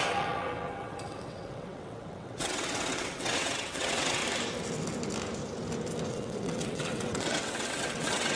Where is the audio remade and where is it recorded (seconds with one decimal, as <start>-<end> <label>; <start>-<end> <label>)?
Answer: 0.0-4.2 remade; 4.2-6.1 recorded; 6.1-8.4 remade